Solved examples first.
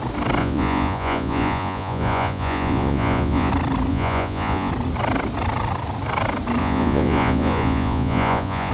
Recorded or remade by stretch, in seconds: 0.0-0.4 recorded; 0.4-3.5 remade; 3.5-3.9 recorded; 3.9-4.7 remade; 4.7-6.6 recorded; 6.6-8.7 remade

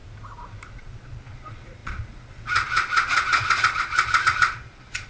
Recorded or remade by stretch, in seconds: 0.0-0.7 recorded; 0.7-5.1 remade

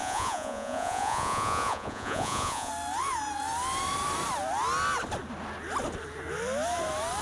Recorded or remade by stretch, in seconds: 0.0-2.7 remade; 2.7-7.2 recorded

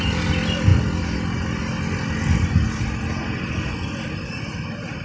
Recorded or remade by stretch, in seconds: 0.0-5.0 recorded

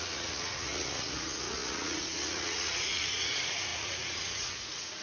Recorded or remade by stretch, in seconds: 0.0-5.0 remade

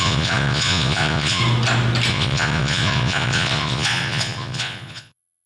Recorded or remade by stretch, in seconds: 0.0-1.4 remade; 1.4-2.1 recorded; 2.1-5.5 remade